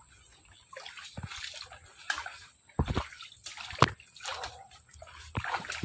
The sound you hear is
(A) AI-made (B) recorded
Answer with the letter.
B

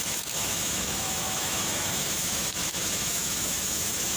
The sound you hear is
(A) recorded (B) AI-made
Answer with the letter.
B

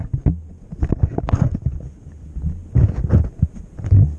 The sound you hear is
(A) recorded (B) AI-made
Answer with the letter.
A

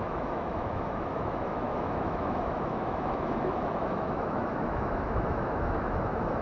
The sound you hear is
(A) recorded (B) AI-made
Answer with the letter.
B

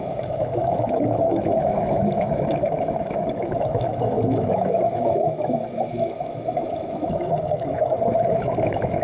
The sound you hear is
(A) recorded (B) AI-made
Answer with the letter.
B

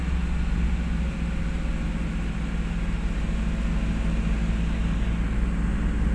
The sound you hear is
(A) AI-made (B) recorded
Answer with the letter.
B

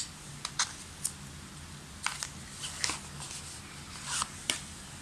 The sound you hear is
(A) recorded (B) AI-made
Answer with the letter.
A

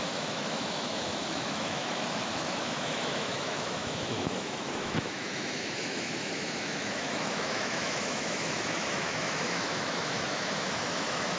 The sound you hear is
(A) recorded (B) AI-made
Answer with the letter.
B